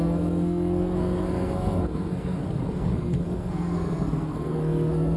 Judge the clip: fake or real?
fake